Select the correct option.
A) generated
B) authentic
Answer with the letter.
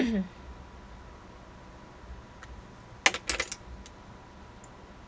B